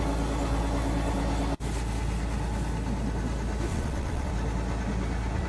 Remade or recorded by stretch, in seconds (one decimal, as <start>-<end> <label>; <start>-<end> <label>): 0.0-3.7 recorded; 3.7-4.3 remade; 4.3-5.5 recorded